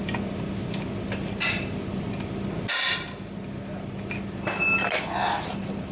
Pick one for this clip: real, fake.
real